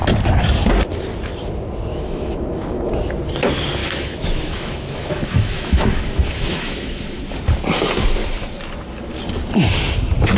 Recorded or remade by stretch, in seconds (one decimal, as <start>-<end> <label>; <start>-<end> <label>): 0.0-1.9 recorded; 1.9-2.9 remade; 2.9-3.8 recorded; 3.8-7.2 remade; 7.2-10.4 recorded